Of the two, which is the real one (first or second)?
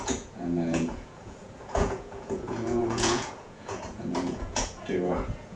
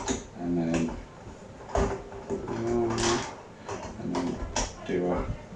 second